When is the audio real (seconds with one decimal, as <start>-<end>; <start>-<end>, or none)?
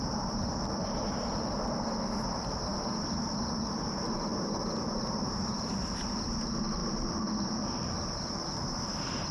none